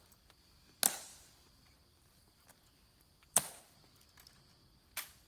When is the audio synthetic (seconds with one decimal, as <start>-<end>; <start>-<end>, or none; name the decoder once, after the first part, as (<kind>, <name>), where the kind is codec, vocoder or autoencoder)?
1.1-2.3 (vocoder, BigVGAN v2); 2.9-3.6